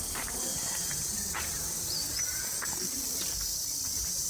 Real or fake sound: real